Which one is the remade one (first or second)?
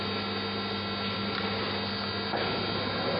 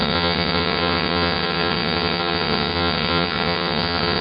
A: second